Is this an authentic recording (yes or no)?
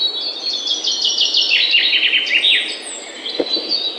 yes